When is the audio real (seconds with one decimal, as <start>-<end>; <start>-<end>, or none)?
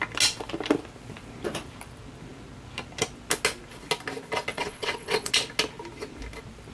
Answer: 0.0-4.5; 5.3-6.7